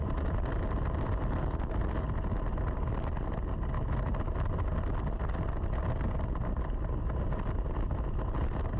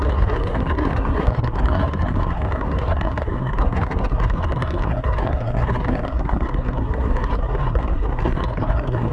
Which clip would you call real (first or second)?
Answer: first